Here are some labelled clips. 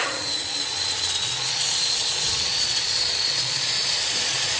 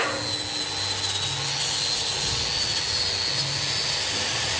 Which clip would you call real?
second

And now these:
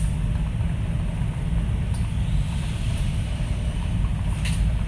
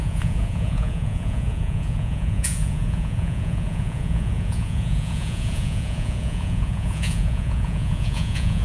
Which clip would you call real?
first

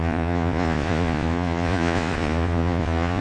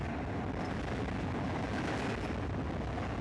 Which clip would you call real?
second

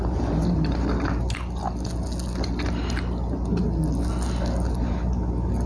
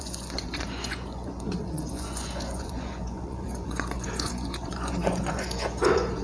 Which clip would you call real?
first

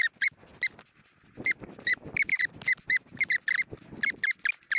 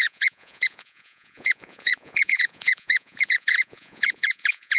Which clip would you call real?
first